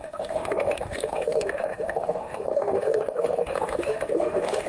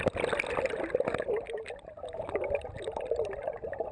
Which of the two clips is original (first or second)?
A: second